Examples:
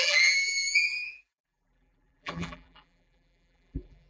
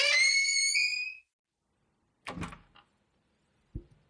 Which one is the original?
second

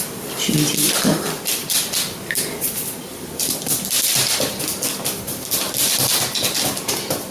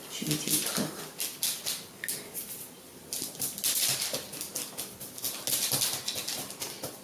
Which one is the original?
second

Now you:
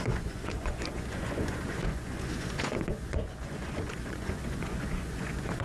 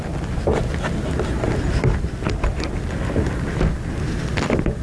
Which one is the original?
second